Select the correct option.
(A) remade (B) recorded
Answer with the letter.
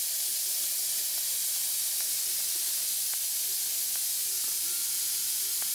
B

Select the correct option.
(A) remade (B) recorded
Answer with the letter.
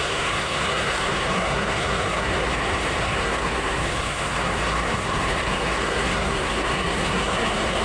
A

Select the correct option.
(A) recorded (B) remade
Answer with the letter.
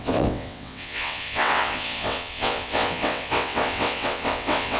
B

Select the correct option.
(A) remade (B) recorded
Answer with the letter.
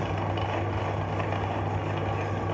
B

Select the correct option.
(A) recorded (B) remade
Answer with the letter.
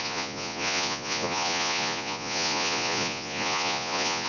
B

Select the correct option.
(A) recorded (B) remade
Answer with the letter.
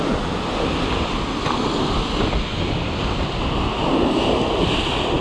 A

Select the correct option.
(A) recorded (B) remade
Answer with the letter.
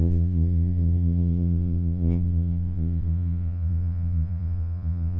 B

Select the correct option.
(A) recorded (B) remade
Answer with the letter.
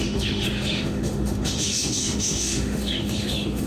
B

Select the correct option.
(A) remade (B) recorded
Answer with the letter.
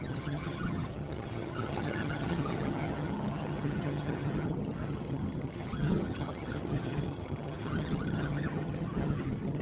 A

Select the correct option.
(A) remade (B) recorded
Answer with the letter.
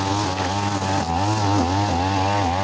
B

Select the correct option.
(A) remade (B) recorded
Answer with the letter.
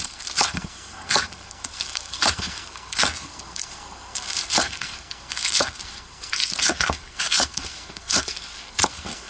A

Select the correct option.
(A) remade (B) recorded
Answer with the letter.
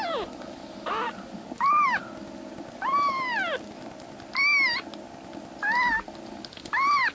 B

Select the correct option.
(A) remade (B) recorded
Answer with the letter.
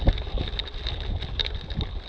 B